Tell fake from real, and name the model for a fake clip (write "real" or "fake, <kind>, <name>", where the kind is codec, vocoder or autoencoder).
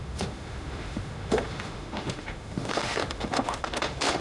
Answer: fake, autoencoder, DAC-VAE